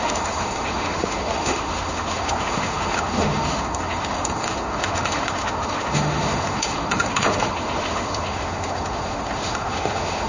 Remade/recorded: remade